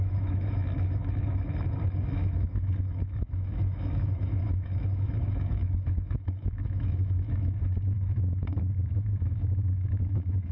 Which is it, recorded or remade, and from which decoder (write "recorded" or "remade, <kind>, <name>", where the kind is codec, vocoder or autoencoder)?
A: remade, autoencoder, DAC-VAE